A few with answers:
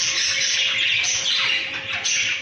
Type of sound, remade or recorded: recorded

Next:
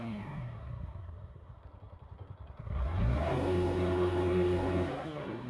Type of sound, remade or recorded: remade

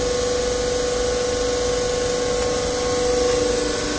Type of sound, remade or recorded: recorded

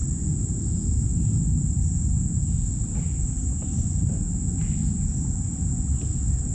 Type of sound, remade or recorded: recorded